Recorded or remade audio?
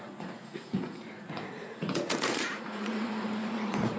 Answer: remade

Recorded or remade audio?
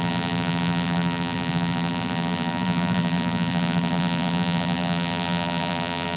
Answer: remade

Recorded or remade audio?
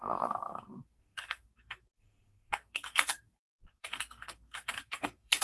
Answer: remade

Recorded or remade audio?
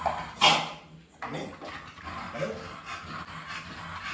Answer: recorded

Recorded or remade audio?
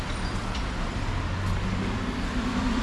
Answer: recorded